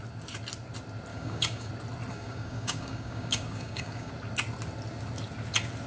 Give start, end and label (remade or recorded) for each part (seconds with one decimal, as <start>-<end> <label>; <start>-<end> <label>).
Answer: 0.0-1.1 recorded; 1.1-1.7 remade; 1.7-2.1 recorded; 2.1-4.1 remade; 4.1-5.9 recorded